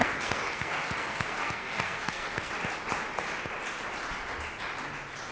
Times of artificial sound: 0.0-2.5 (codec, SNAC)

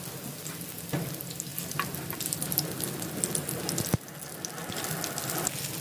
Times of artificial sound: none

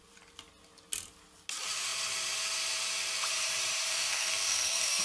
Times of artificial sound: 3.9-5.0 (codec, SNAC)